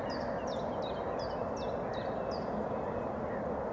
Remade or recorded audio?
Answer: recorded